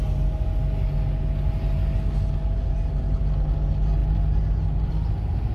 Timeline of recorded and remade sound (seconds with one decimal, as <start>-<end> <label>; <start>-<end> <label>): 0.0-5.5 recorded